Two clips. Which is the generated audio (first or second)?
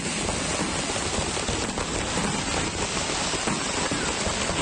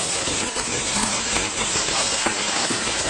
second